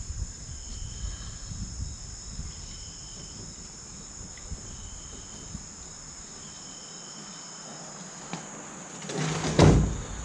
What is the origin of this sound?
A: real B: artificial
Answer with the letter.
A